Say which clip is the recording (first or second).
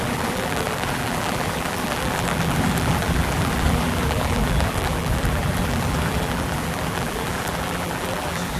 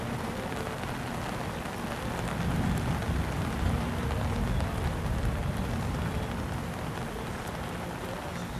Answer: second